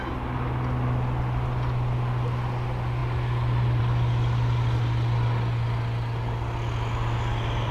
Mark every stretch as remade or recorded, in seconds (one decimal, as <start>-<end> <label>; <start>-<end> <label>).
0.0-7.7 recorded